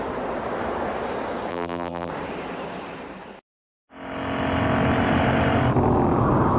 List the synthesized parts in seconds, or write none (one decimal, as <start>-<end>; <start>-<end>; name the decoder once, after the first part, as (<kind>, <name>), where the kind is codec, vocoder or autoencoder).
1.5-2.1 (vocoder, BigVGAN v2)